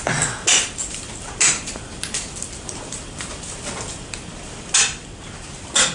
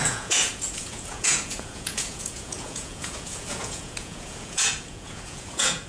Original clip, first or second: first